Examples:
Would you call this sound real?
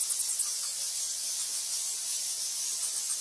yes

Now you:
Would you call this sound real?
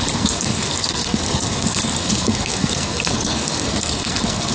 no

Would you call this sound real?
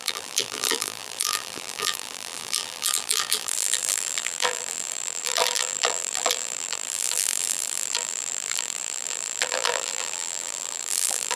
no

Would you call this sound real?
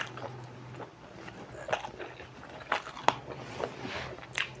yes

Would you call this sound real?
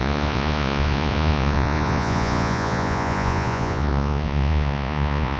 no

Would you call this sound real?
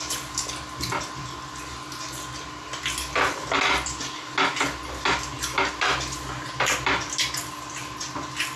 yes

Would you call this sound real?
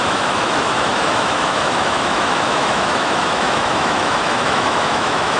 no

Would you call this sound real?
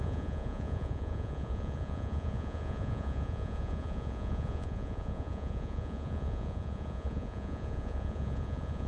no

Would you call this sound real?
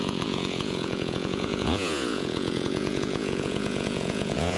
no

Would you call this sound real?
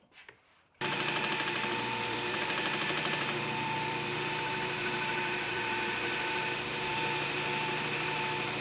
no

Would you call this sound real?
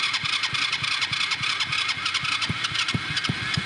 yes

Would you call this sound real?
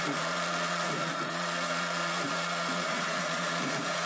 no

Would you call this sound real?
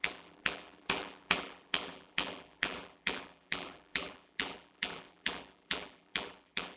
no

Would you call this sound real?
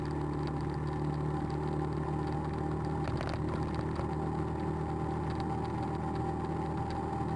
yes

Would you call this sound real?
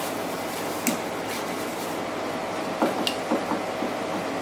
yes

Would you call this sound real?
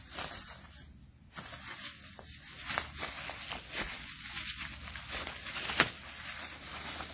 yes